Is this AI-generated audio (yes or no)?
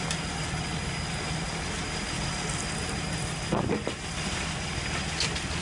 no